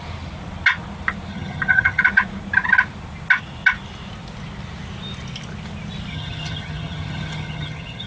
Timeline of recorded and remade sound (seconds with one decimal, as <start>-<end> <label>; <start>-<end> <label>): 0.0-1.3 recorded; 1.3-2.0 remade; 2.0-6.1 recorded; 6.1-8.1 remade